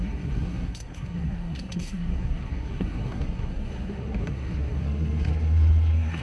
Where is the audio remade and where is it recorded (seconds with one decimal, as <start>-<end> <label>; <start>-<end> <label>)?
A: 0.0-6.2 remade